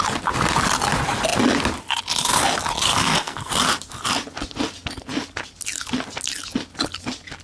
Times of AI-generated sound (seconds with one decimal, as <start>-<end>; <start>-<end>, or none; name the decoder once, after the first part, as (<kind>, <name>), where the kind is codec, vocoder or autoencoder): 2.9-3.5 (codec, SNAC)

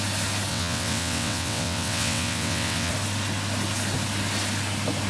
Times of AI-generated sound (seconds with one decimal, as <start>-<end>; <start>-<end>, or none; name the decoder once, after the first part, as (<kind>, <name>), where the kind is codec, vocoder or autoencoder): 0.5-2.9 (vocoder, WaveNeXt)

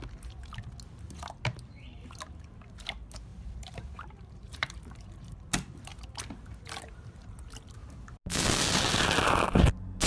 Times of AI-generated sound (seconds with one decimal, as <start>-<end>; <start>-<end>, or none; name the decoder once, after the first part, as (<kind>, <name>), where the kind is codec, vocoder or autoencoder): 3.3-5.5 (vocoder, BigVGAN v2)

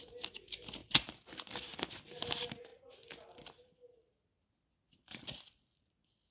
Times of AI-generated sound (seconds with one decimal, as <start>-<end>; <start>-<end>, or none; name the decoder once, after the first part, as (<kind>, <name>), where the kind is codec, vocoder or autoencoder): none

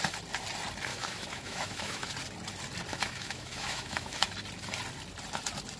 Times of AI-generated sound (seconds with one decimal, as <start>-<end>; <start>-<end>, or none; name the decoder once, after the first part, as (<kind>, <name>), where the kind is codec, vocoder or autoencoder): 0.9-2.1 (autoencoder, DAC-VAE); 2.9-4.3

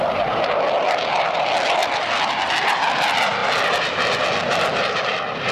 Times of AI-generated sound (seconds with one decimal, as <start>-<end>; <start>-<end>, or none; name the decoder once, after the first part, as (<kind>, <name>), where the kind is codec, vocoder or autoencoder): none

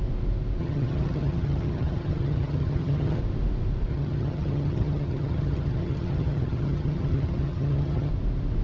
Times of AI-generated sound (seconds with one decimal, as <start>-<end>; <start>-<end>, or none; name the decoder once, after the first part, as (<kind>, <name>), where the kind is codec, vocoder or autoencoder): 0.6-3.2 (vocoder, HiFi-GAN); 3.9-8.1